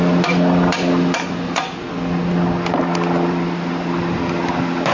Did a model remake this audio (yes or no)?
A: no